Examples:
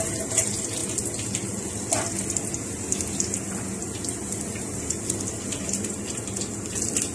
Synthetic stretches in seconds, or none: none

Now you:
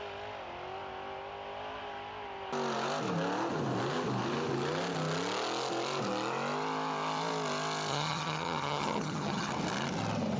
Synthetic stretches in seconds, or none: 7.9-9.5 (vocoder, HiFi-GAN)

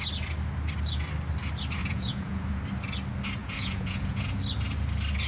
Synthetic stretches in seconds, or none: 1.8-2.6 (vocoder, Vocos); 3.4-4.4